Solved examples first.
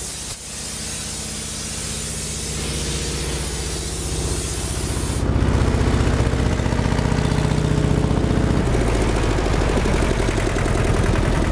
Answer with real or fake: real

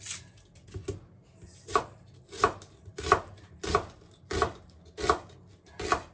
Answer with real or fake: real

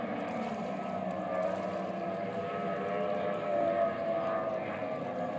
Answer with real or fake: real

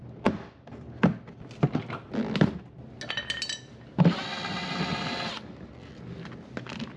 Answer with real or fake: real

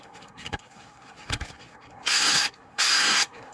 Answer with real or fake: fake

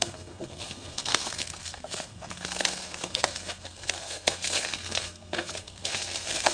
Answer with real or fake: fake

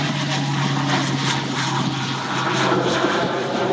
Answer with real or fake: real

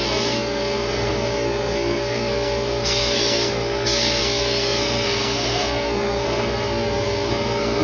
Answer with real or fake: fake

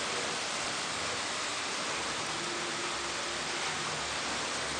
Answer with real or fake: real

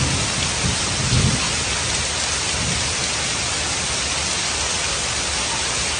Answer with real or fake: real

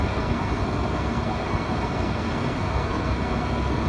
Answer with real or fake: fake